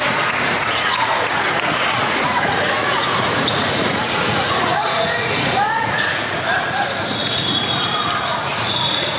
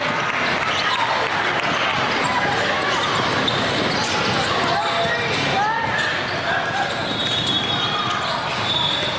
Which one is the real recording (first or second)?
second